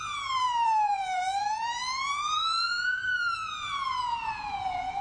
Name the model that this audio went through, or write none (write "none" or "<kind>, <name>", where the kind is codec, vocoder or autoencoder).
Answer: vocoder, Vocos